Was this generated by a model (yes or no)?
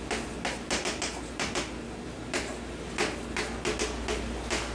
no